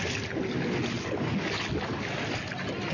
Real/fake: real